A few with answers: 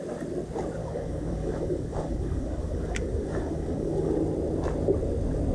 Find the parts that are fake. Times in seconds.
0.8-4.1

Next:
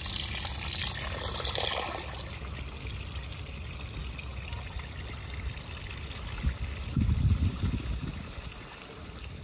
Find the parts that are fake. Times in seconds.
none

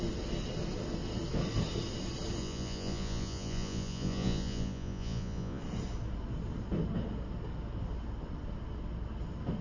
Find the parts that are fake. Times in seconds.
2.4-5.6

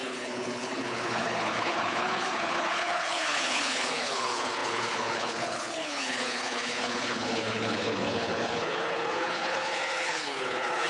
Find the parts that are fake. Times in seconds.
0.0-10.9

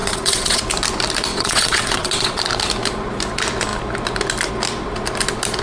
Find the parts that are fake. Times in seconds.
0.0-0.6; 1.3-2.4

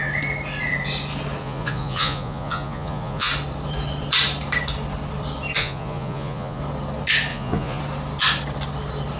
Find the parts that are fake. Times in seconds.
1.4-3.3; 5.6-6.6; 7.3-7.8

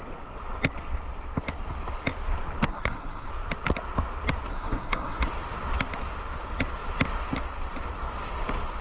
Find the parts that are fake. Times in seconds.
2.7-3.3; 4.5-5.2

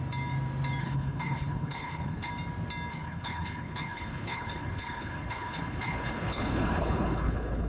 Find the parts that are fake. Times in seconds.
0.8-2.3; 2.9-7.7